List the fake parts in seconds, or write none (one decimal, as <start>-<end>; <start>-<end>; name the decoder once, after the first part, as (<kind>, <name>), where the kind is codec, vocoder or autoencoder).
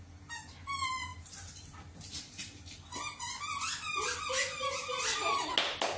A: none